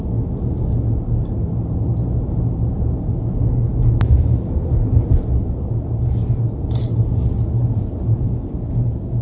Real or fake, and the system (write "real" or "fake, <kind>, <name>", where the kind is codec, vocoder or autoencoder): real